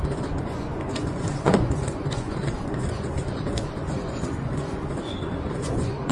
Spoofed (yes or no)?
yes